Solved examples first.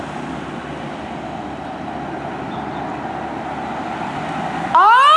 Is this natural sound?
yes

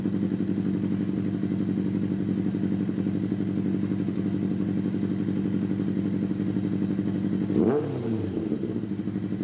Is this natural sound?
yes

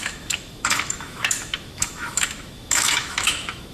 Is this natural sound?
no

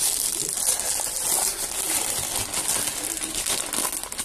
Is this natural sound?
yes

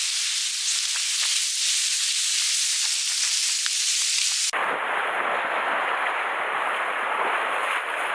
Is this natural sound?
yes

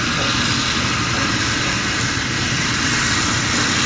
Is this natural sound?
yes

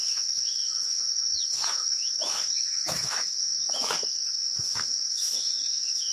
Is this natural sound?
no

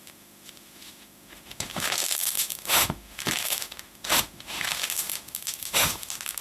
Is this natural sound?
no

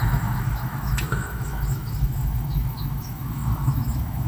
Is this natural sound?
no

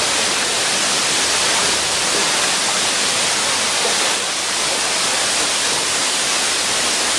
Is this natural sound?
yes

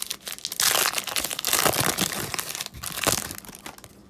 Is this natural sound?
yes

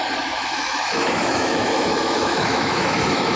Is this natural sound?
no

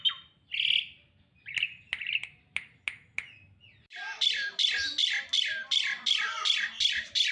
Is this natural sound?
yes